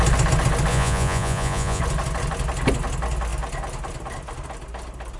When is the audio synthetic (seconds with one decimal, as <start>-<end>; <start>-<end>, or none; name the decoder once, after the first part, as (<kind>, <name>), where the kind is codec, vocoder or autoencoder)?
0.7-1.8 (vocoder, Vocos)